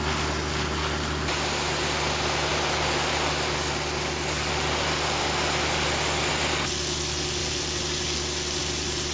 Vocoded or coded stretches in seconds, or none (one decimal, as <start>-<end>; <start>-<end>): none